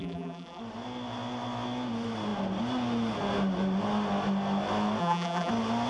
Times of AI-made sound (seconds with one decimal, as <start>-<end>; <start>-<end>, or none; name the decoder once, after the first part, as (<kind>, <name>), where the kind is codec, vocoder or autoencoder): 0.0-0.6 (vocoder, BigVGAN v2); 5.0-5.5